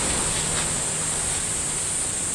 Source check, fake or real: real